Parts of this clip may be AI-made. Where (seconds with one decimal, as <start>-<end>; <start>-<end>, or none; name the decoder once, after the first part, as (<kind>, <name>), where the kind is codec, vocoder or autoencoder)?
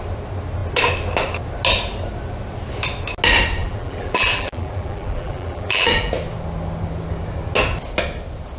3.6-6.1 (vocoder, BigVGAN v2)